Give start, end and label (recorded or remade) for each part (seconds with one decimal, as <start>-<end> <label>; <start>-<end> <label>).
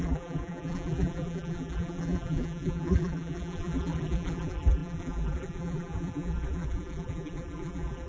0.0-8.1 remade